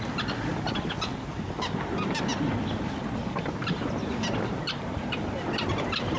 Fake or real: real